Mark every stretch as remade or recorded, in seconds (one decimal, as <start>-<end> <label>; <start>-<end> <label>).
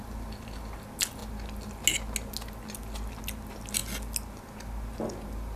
0.0-5.6 recorded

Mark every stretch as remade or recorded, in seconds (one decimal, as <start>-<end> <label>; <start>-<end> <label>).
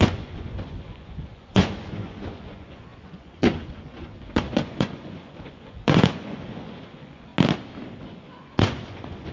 0.0-7.3 remade; 7.3-8.0 recorded; 8.0-9.3 remade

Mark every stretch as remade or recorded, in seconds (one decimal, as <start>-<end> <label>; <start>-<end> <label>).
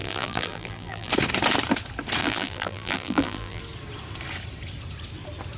0.0-1.1 remade; 1.1-2.2 recorded; 2.2-3.6 remade; 3.6-5.6 recorded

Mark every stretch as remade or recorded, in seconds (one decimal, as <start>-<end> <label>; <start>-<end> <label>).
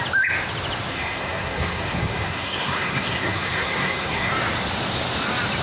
0.0-0.9 recorded; 0.9-4.3 remade; 4.3-5.6 recorded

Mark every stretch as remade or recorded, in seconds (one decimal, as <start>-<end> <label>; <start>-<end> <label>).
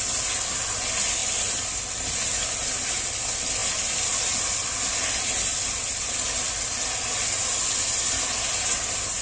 0.0-3.6 recorded; 3.6-4.8 remade; 4.8-5.5 recorded; 5.5-6.1 remade; 6.1-9.2 recorded